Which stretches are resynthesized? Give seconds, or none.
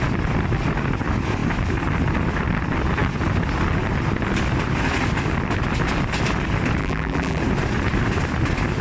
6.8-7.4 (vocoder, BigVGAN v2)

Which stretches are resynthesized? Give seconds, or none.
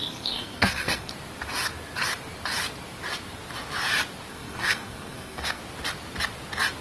0.0-1.1 (codec, SNAC); 4.3-5.6